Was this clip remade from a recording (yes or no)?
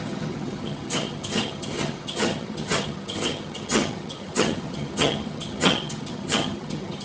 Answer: yes